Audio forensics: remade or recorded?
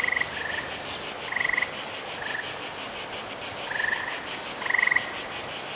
recorded